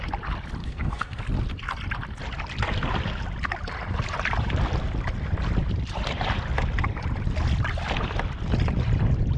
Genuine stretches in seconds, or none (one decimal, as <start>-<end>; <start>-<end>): 0.0-0.6; 1.2-9.4

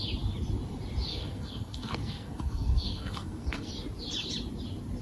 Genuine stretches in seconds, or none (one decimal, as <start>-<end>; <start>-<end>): 0.0-1.1; 3.7-5.0

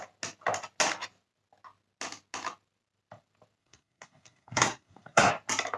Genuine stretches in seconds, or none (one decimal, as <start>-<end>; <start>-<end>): 0.0-3.6; 5.3-5.8

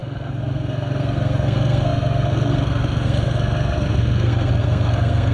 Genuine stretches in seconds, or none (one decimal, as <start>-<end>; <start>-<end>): none

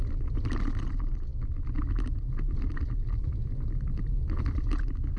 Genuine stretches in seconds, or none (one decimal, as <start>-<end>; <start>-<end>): 0.0-5.2

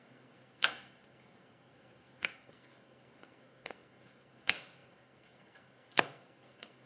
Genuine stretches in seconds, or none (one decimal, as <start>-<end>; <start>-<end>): none

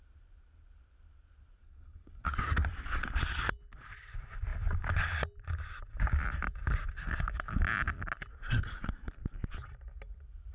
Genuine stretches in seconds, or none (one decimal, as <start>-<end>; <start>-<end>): 0.0-1.6; 2.7-8.3; 9.1-10.5

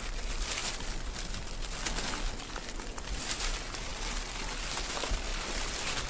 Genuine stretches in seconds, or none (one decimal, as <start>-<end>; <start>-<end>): 0.0-6.1